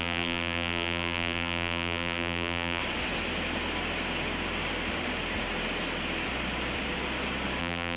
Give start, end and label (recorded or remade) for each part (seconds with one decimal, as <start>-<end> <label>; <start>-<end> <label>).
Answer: 0.0-2.8 remade; 2.8-7.6 recorded; 7.6-8.0 remade